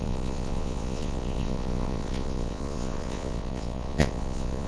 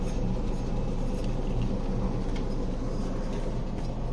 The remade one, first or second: first